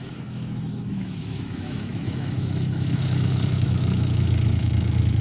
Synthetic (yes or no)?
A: yes